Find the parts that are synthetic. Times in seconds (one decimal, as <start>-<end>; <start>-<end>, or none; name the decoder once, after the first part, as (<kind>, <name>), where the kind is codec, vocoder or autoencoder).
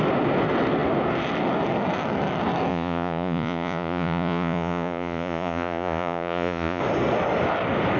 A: 2.7-6.8 (vocoder, Vocos)